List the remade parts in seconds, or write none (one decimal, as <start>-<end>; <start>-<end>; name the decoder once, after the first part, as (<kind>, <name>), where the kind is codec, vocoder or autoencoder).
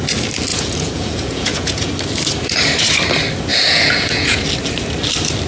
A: 0.5-1.9 (vocoder, Vocos); 3.5-4.4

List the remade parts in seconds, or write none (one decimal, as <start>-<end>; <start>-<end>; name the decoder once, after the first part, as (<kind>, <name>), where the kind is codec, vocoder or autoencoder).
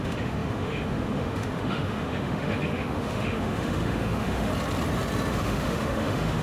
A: 0.0-4.5 (autoencoder, DAC-VAE); 5.3-6.4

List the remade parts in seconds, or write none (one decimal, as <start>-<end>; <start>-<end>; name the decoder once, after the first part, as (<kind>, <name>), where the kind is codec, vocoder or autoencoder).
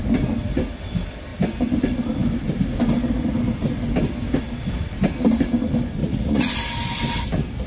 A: 6.0-6.5 (vocoder, Vocos)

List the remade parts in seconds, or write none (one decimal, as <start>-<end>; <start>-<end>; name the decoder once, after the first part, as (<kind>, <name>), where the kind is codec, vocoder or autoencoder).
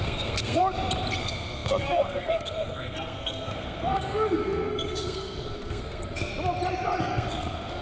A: 0.0-0.6 (codec, SNAC); 1.2-6.3; 7.0-7.8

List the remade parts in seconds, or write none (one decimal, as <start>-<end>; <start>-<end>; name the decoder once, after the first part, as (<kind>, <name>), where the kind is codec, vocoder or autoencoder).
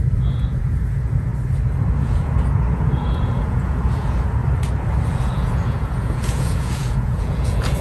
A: 0.0-1.3 (vocoder, Vocos); 2.0-4.4; 5.2-7.8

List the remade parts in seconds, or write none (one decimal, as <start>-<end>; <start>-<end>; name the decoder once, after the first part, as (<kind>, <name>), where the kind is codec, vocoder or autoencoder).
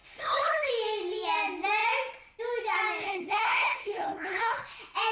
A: 0.0-0.7 (codec, HILCodec); 3.0-4.6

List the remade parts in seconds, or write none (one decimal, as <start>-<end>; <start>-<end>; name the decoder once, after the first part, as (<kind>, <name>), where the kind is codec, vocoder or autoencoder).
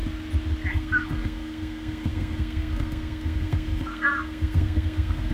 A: 0.7-5.3 (codec, SNAC)